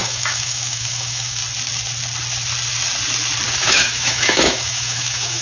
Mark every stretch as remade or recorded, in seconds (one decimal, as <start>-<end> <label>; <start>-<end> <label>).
0.0-1.4 remade; 1.4-3.6 recorded; 3.6-5.4 remade